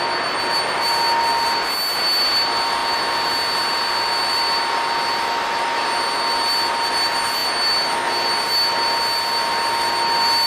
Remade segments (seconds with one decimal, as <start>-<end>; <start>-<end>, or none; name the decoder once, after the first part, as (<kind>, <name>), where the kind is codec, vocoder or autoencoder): none